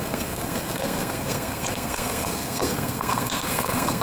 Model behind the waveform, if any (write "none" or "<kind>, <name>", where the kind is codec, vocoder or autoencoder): codec, SNAC